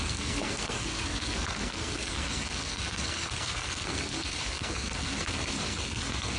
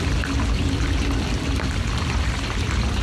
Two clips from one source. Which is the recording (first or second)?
second